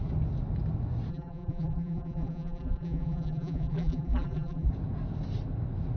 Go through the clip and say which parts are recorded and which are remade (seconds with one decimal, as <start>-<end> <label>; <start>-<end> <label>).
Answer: 0.0-1.1 recorded; 1.1-4.7 remade; 4.7-6.0 recorded

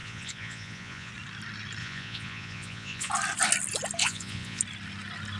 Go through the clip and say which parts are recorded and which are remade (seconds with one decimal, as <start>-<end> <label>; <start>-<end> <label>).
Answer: 0.0-1.1 remade; 1.1-1.8 recorded; 1.8-3.1 remade; 3.1-4.0 recorded; 4.0-4.6 remade; 4.6-5.4 recorded

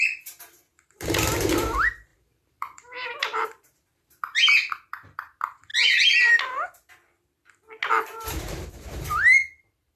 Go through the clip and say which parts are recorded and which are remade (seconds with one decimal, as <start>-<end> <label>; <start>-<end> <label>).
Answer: 0.0-5.7 remade; 5.7-7.9 recorded; 7.9-10.0 remade